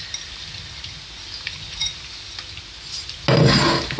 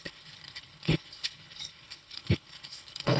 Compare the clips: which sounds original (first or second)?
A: first